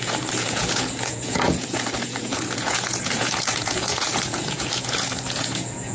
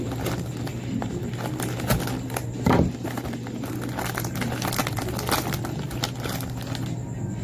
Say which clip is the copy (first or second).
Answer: first